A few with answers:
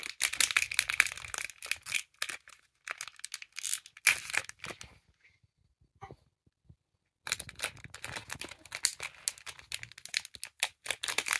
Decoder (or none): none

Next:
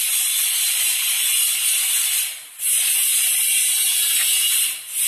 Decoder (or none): vocoder, BigVGAN v2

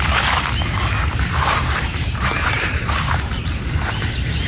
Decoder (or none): vocoder, BigVGAN v2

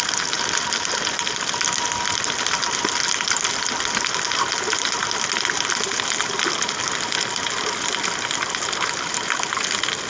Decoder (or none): none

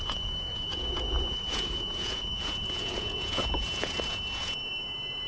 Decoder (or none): vocoder, Vocos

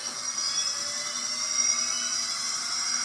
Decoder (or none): none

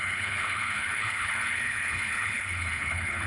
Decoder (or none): codec, HILCodec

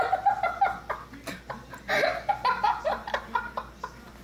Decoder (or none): none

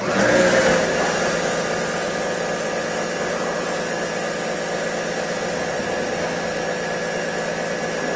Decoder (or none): none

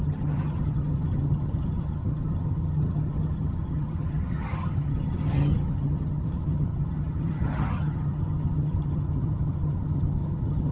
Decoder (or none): vocoder, HiFi-GAN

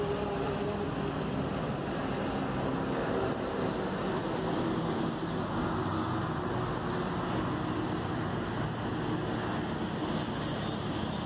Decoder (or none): none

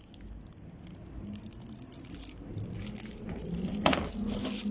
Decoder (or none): none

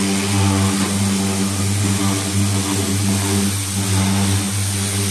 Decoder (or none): none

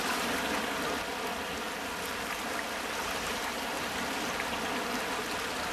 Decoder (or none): none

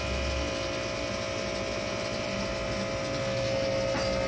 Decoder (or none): none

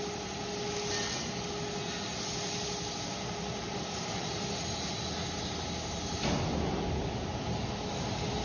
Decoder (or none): none